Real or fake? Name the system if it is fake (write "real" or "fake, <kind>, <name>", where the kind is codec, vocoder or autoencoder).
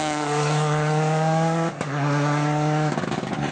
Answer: fake, codec, DAC